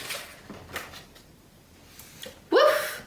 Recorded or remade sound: recorded